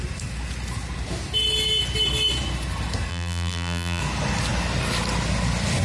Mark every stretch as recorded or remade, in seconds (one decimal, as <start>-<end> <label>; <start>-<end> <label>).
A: 0.0-3.1 recorded; 3.1-4.0 remade; 4.0-5.8 recorded